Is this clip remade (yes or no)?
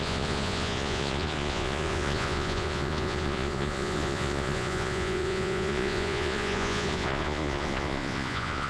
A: yes